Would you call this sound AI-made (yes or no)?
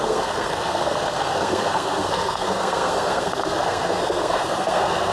yes